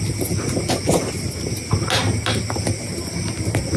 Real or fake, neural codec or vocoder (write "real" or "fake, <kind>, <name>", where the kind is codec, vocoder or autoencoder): real